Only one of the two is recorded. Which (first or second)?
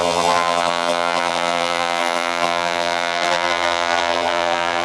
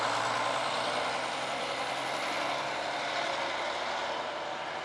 second